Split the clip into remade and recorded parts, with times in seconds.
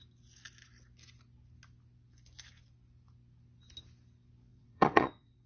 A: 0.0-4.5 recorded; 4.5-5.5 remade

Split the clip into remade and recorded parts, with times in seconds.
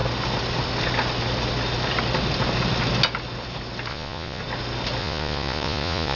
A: 0.0-3.9 recorded; 3.9-4.4 remade; 4.4-5.0 recorded; 5.0-6.2 remade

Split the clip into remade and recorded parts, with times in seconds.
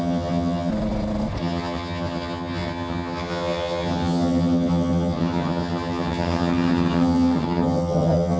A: 0.0-0.7 remade; 0.7-1.4 recorded; 1.4-8.4 remade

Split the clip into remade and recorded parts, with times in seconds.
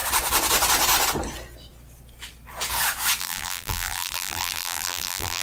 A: 0.0-3.2 recorded; 3.2-5.4 remade